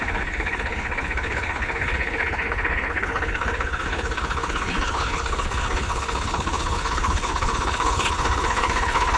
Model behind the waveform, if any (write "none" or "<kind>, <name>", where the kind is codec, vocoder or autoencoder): codec, HILCodec